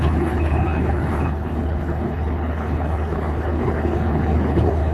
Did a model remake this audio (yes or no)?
yes